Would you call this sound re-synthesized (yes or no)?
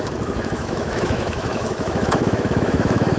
yes